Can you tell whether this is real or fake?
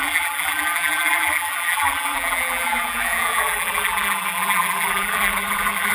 fake